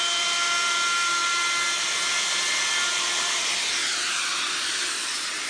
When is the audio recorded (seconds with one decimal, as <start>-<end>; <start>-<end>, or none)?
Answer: 0.0-5.5